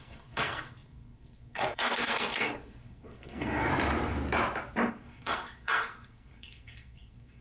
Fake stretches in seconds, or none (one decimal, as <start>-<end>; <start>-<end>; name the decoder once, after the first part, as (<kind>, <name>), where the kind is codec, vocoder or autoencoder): 0.0-3.7 (codec, SNAC); 4.9-7.4